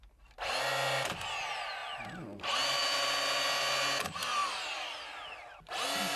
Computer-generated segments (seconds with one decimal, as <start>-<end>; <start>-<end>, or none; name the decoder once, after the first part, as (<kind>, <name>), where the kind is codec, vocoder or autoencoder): 4.4-5.1 (vocoder, BigVGAN v2)

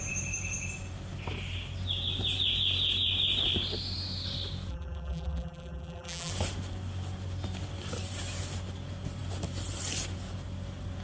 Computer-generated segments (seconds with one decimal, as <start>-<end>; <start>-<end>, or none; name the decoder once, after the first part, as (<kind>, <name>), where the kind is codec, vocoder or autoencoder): 4.7-6.3 (vocoder, BigVGAN v2)

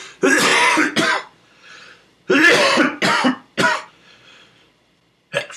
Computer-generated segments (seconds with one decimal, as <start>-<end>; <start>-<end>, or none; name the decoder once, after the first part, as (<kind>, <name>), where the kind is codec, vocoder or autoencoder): 0.0-0.5 (vocoder, BigVGAN v2); 3.9-5.6

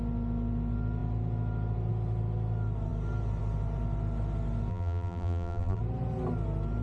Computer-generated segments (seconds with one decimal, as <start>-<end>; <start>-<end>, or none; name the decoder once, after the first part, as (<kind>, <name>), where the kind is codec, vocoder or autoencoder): 4.7-5.8 (vocoder, BigVGAN v2)